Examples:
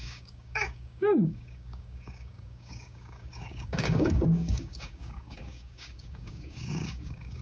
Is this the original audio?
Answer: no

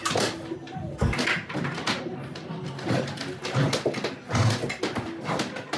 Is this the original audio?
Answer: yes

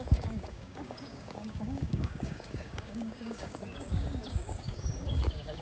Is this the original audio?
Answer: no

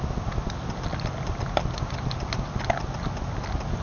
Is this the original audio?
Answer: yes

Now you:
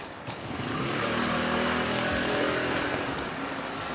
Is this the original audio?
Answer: no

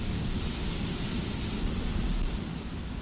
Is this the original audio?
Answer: yes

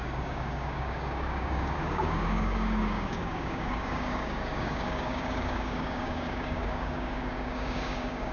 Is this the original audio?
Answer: no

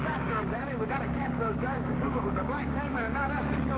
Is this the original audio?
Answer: no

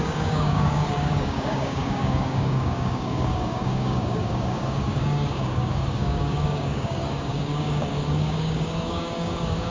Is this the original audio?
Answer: no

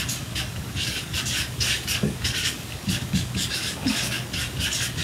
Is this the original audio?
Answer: no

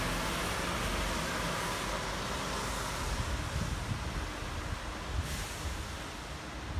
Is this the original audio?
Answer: yes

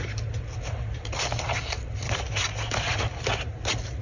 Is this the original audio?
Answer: yes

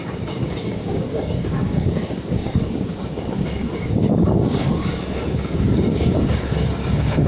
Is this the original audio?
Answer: no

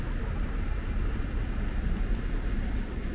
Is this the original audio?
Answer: yes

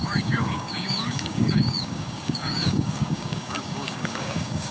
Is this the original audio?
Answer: no